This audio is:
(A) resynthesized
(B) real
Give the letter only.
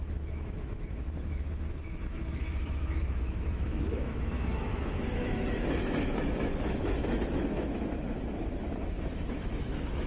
A